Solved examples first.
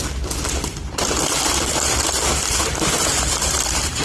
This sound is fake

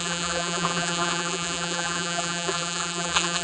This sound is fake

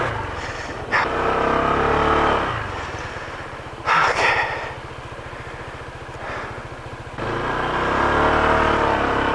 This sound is real